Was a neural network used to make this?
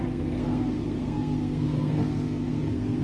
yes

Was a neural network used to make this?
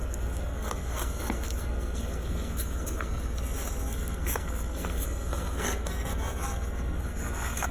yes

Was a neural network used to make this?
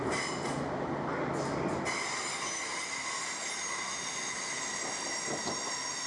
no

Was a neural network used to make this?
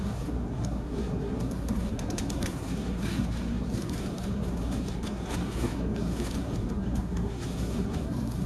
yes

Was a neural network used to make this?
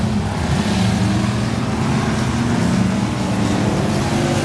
no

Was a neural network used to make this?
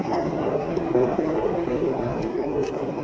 yes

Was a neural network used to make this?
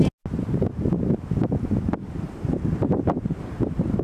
no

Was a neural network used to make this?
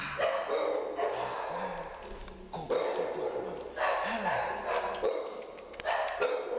no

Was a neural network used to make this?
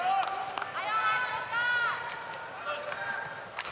no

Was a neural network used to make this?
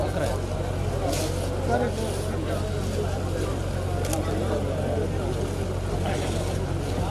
no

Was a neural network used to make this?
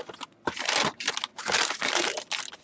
no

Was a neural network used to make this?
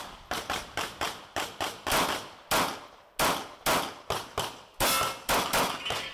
no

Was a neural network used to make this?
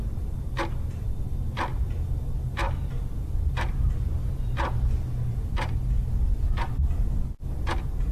no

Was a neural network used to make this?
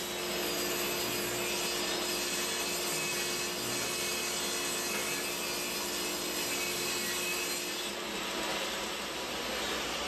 no